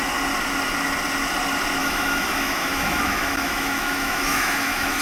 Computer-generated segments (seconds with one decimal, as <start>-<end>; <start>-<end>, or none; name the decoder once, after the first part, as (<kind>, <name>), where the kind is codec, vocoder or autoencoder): 1.8-5.0 (autoencoder, DAC-VAE)

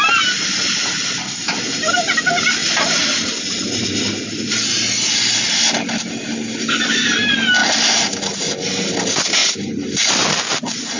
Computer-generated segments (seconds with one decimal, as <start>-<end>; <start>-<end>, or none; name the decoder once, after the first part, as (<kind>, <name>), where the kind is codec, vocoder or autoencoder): none

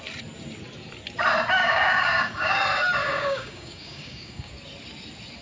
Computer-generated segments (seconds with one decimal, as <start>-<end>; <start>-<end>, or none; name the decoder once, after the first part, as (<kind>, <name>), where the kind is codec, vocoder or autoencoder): 1.6-2.6 (codec, DAC); 3.0-4.5